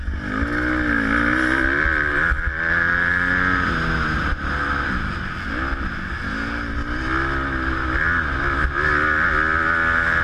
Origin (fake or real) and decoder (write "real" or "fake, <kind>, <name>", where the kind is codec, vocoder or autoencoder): real